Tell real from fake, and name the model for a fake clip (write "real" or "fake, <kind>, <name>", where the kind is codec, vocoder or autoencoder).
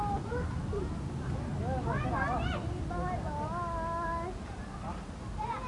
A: real